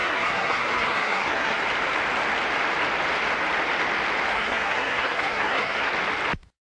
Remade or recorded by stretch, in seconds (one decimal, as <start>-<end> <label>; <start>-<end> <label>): 0.0-1.6 remade; 1.6-4.3 recorded; 4.3-5.9 remade; 5.9-6.8 recorded